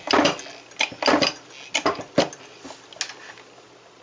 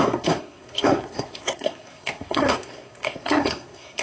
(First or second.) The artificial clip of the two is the second